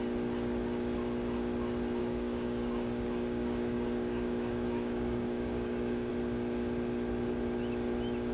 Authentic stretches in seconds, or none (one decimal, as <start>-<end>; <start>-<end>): 0.0-2.0; 6.1-8.3